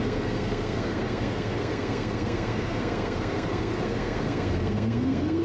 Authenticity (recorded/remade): remade